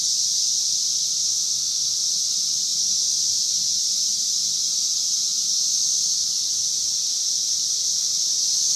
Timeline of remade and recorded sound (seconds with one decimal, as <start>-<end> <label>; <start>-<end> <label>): 0.0-1.3 recorded; 1.3-1.8 remade; 1.8-8.8 recorded